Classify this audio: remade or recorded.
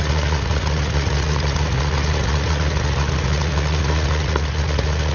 remade